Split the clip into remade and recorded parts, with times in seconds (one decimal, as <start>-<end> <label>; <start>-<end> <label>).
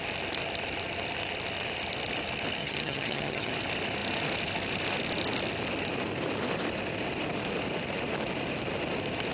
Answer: 0.0-2.6 recorded; 2.6-3.5 remade; 3.5-9.3 recorded